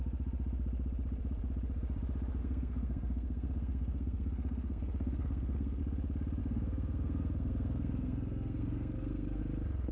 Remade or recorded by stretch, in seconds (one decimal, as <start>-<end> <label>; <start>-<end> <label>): 0.0-2.4 recorded; 2.4-5.8 remade; 5.8-6.4 recorded; 6.4-9.4 remade; 9.4-9.9 recorded